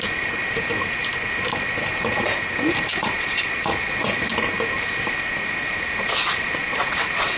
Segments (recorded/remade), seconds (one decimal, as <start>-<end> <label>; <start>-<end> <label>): 0.0-3.0 recorded; 3.0-4.3 remade; 4.3-6.2 recorded; 6.2-7.4 remade